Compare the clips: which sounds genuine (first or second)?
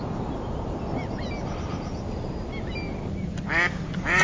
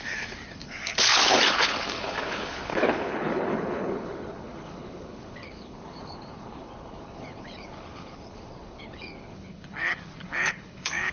first